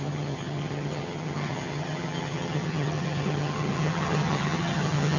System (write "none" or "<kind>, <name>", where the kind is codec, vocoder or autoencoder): vocoder, HiFi-GAN